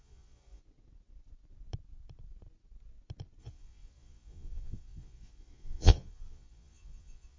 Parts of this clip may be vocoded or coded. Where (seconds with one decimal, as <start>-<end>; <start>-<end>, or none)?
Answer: 0.0-0.6; 3.4-7.4